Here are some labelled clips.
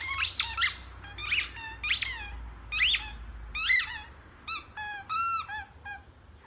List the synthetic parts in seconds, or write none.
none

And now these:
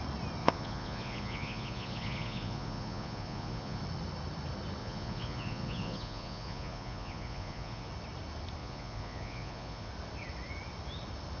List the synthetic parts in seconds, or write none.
0.4-3.8 (vocoder, Vocos); 4.8-7.9; 8.6-9.9